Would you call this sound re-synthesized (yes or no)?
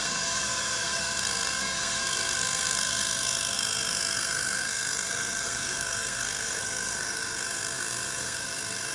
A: yes